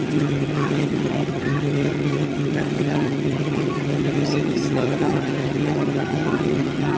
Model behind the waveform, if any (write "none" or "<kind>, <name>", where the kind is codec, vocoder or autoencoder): vocoder, HiFi-GAN